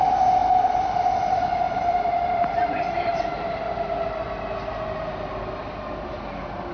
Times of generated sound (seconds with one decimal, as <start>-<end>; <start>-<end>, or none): 0.4-3.8